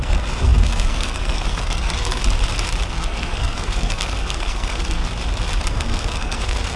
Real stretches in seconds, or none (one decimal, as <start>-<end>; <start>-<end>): 2.2-2.9; 5.0-5.7